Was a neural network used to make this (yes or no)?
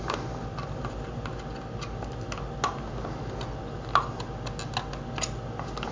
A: no